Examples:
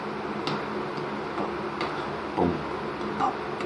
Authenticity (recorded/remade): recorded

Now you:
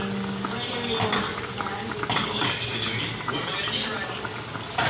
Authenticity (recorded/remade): recorded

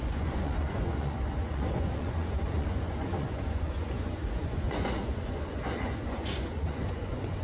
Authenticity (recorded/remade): remade